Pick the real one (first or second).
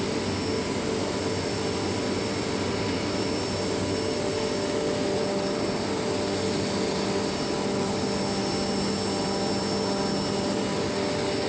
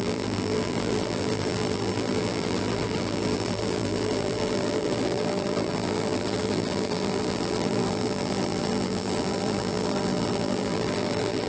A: first